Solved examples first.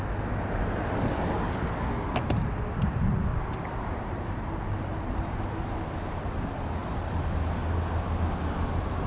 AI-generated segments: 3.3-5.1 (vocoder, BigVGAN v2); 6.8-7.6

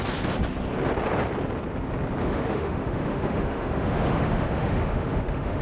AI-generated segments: 2.2-5.6 (autoencoder, DAC-VAE)